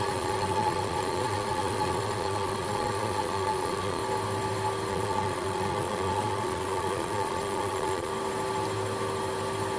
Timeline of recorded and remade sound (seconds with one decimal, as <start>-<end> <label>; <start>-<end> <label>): 0.0-4.0 remade; 4.0-4.9 recorded; 4.9-8.1 remade; 8.1-9.8 recorded